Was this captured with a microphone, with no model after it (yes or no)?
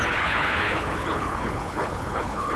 no